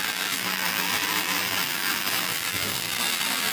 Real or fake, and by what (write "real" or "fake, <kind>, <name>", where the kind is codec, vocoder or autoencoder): fake, vocoder, BigVGAN v2